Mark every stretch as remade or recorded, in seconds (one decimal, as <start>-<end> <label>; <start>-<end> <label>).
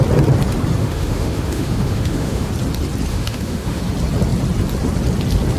0.0-0.8 recorded; 0.8-2.5 remade; 2.5-3.1 recorded; 3.1-3.8 remade; 3.8-5.6 recorded